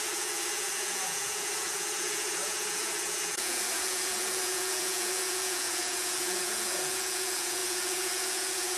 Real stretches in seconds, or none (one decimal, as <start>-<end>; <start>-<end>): none